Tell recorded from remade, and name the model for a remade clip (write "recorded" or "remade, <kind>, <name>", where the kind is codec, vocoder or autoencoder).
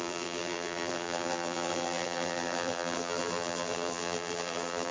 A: remade, vocoder, BigVGAN v2